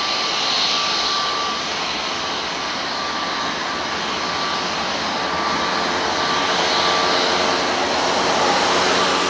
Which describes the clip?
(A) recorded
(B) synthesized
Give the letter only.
A